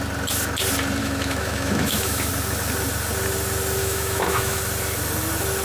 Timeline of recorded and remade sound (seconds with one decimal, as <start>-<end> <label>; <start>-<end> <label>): 0.0-1.0 recorded; 1.0-2.3 remade; 2.3-3.8 recorded; 3.8-4.6 remade; 4.6-5.6 recorded